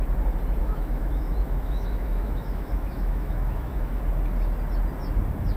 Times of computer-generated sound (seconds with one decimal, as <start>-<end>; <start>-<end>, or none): 0.6-4.0